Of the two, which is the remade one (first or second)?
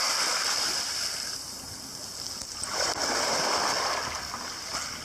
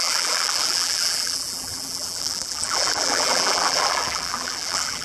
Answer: second